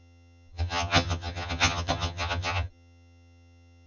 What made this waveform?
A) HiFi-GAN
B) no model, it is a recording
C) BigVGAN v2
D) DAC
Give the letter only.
A